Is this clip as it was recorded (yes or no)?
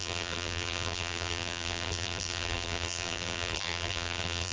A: no